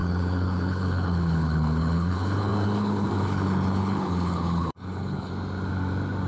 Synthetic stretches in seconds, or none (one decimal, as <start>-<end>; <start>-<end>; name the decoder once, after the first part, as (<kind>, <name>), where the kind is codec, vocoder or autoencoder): 0.0-5.3 (codec, HILCodec)